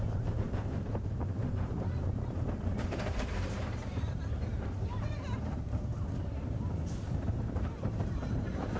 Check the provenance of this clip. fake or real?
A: fake